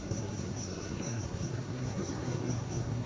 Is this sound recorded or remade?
remade